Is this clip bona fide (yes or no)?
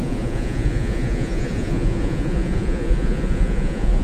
no